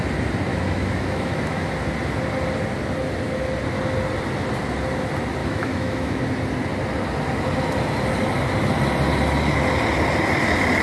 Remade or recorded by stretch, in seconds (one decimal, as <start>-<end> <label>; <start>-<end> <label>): 0.0-0.5 recorded; 0.5-1.7 remade; 1.7-5.4 recorded; 5.4-6.2 remade; 6.2-10.8 recorded